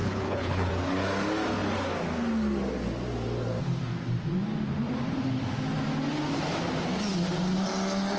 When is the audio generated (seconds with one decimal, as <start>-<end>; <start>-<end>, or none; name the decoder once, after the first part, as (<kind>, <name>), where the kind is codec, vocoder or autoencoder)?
0.0-0.7 (codec, HILCodec)